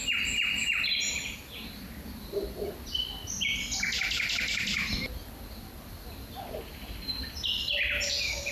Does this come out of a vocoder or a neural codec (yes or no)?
no